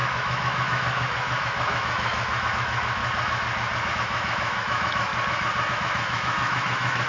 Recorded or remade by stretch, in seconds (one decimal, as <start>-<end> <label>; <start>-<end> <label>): 0.0-3.0 remade; 3.0-3.9 recorded; 3.9-5.1 remade; 5.1-5.7 recorded; 5.7-7.1 remade